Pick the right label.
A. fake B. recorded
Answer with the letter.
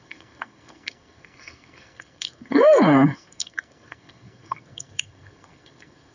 A